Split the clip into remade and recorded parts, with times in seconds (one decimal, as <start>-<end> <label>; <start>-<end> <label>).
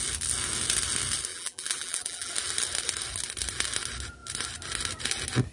0.0-1.3 recorded; 1.3-2.3 remade; 2.3-5.5 recorded